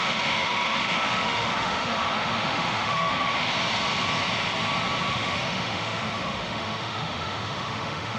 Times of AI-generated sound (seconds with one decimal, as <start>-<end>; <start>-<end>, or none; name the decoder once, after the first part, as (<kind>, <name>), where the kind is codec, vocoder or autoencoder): 0.0-3.5 (autoencoder, DAC-VAE); 5.1-8.2